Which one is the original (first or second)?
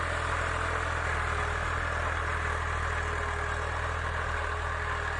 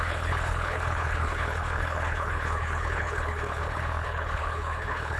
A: first